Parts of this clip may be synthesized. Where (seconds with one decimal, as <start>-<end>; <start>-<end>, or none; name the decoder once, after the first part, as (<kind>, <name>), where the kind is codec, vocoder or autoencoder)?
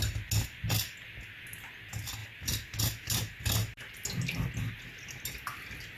none